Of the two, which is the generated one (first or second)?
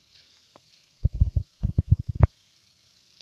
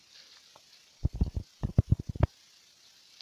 first